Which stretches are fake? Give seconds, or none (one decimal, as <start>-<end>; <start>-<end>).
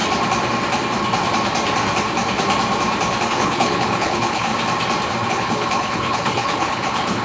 3.3-4.5; 5.3-7.2